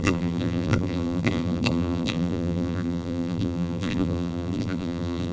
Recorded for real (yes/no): no